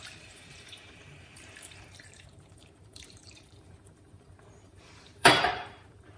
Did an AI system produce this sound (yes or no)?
yes